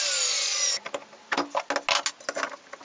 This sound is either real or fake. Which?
real